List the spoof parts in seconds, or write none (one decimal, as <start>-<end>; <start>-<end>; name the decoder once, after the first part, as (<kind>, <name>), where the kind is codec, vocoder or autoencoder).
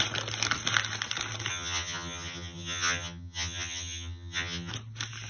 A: 1.5-4.7 (vocoder, HiFi-GAN)